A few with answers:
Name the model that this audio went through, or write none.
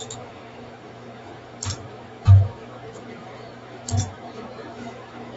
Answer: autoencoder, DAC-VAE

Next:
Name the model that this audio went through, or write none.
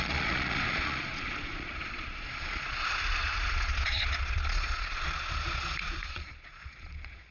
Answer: vocoder, Vocos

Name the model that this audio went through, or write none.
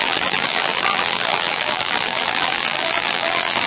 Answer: vocoder, BigVGAN v2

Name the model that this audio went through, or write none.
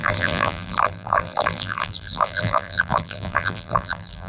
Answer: vocoder, BigVGAN v2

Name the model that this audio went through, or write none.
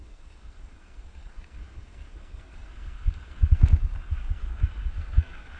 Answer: codec, SNAC